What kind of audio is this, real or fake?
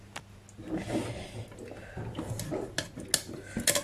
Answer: real